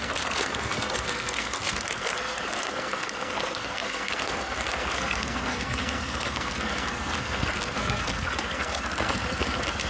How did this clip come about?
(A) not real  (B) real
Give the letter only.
A